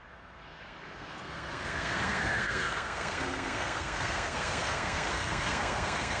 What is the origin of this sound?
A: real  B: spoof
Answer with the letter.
B